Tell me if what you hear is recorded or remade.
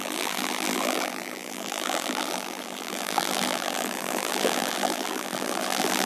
remade